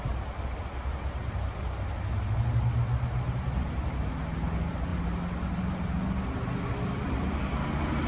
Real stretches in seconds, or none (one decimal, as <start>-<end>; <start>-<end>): 0.0-8.1